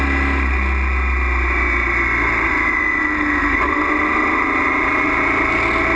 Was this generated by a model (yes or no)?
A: no